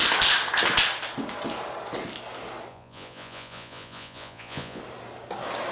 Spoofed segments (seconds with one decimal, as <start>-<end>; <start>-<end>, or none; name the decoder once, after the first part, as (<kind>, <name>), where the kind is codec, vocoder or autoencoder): 2.7-4.8 (vocoder, Vocos)